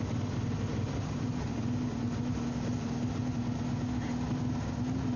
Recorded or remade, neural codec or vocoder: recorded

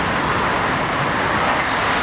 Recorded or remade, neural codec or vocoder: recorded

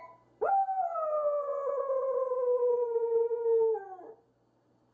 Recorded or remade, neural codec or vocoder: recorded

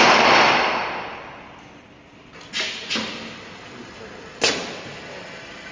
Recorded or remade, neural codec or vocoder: recorded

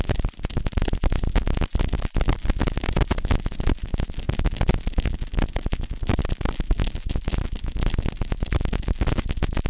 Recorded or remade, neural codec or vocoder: recorded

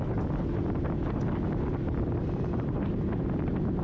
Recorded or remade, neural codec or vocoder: recorded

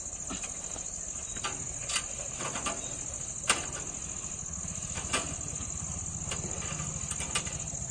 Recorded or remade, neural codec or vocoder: recorded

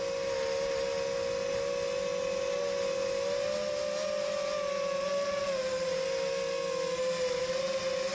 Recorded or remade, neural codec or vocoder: recorded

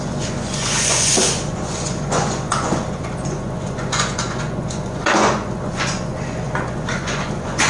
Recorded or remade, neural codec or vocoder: remade, vocoder, Vocos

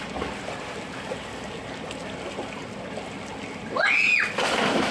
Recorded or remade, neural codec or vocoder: recorded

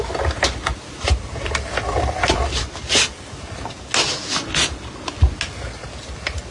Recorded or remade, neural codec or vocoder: recorded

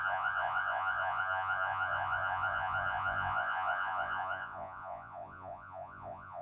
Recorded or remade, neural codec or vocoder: remade, vocoder, Vocos